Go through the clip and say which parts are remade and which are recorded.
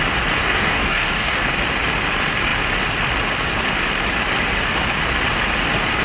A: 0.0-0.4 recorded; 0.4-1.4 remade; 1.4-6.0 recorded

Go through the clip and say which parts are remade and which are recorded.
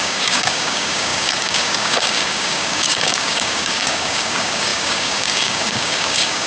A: 0.0-6.5 remade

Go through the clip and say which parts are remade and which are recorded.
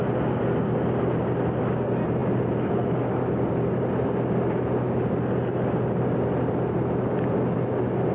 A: 0.0-8.1 recorded